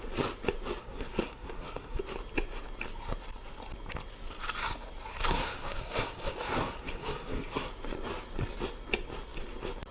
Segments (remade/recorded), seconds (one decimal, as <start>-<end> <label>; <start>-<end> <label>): 0.0-0.8 recorded; 0.8-2.0 remade; 2.0-5.1 recorded; 5.1-7.7 remade; 7.7-9.9 recorded